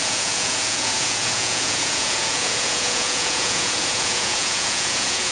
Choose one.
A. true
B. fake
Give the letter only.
B